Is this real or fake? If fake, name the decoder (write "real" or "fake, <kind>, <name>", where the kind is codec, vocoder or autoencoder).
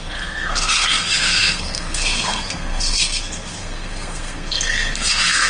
fake, codec, SNAC